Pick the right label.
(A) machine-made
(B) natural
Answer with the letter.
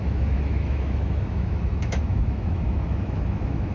A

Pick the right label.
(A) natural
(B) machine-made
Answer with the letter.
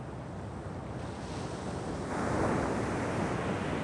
A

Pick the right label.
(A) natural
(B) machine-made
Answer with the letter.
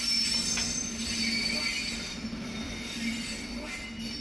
A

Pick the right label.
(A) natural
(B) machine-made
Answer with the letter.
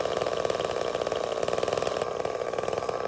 A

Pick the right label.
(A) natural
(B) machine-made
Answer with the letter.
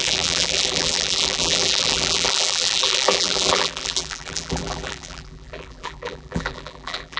B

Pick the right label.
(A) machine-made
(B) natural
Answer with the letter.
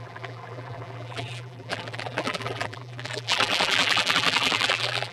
A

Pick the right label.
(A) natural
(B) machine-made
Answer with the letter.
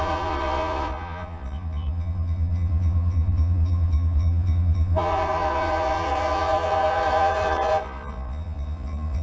B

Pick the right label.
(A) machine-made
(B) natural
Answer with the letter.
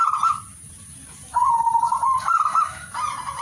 A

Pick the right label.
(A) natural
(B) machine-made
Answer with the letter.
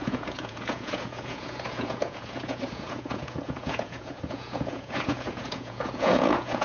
B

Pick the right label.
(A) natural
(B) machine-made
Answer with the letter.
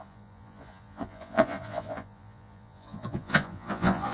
B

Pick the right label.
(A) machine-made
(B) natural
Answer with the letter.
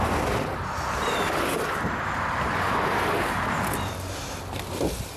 B